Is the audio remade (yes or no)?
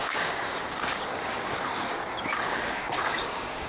yes